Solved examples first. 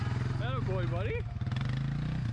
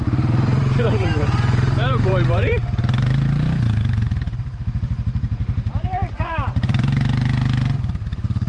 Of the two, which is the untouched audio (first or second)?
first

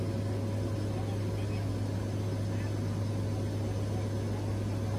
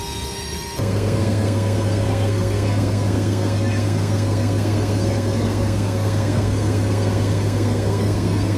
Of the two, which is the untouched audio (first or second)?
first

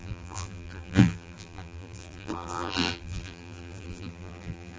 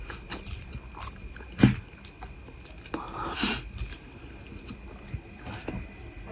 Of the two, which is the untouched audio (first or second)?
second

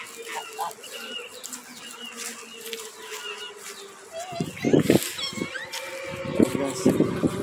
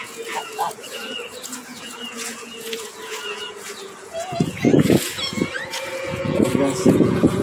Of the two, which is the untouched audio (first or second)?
first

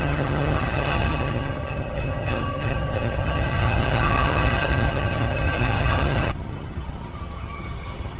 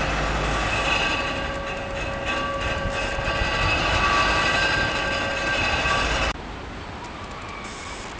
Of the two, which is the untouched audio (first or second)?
second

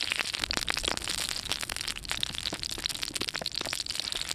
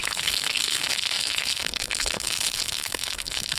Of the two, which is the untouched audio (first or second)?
first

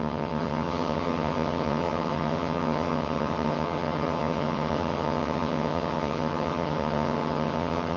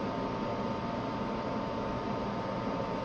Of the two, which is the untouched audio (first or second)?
second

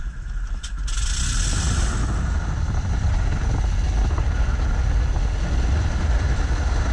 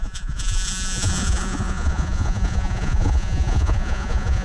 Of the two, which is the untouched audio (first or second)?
first